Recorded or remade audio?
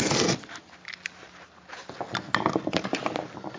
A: recorded